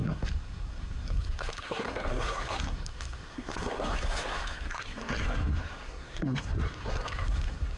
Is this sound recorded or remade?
remade